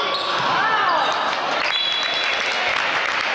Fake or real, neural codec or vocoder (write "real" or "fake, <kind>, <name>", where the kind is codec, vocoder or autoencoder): real